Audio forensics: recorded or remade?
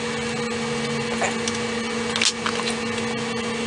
recorded